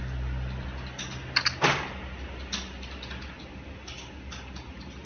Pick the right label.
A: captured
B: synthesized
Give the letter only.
A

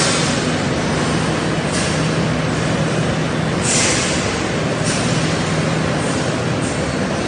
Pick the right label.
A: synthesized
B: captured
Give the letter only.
B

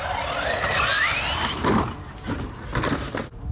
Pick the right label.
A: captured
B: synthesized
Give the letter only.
A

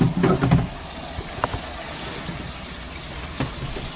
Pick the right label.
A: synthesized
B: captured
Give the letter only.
B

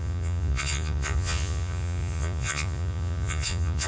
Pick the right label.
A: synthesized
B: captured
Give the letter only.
A